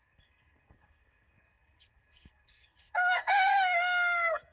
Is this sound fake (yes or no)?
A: yes